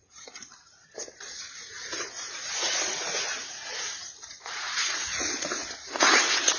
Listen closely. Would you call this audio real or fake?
fake